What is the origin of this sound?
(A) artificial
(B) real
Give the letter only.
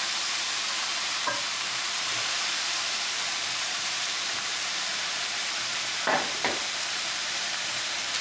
A